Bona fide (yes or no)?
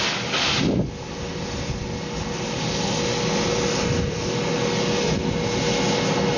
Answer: yes